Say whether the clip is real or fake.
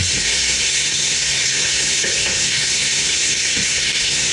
fake